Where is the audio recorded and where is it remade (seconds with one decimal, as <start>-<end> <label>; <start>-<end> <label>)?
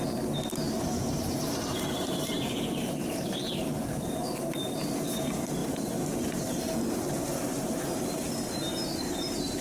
0.0-1.0 recorded; 1.0-4.9 remade; 4.9-5.6 recorded; 5.6-6.3 remade; 6.3-7.3 recorded; 7.3-8.1 remade; 8.1-9.6 recorded